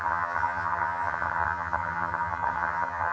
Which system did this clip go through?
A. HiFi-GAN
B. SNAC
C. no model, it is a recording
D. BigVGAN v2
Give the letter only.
A